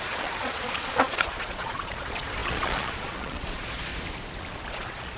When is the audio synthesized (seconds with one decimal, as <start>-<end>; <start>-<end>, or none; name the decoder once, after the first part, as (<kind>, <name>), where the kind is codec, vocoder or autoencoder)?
0.0-3.9 (vocoder, Vocos); 4.7-5.2